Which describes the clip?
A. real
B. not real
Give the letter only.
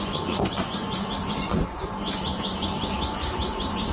B